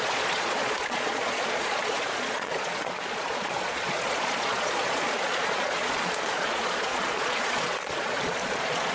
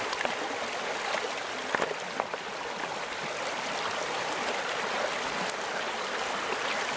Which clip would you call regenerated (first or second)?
first